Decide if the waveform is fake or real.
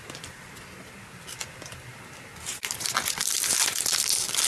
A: fake